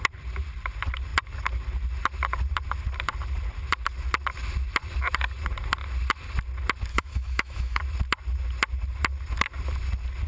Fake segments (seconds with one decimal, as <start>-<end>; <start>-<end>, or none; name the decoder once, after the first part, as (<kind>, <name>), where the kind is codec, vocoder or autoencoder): 6.9-7.8 (autoencoder, DAC-VAE)